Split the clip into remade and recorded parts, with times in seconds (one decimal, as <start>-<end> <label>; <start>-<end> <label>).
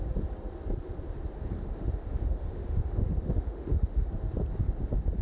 0.0-1.6 recorded; 1.6-4.1 remade; 4.1-5.2 recorded